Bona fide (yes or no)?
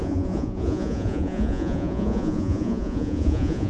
no